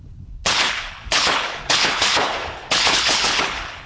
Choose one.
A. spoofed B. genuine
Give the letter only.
A